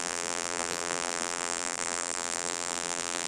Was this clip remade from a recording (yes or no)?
yes